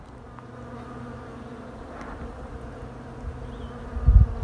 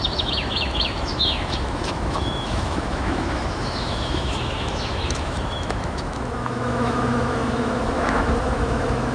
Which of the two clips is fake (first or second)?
second